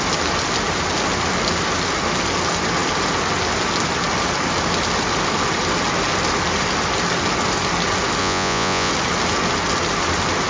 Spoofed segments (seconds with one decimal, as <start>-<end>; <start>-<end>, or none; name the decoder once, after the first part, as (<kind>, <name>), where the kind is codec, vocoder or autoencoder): 8.2-8.9 (vocoder, Vocos)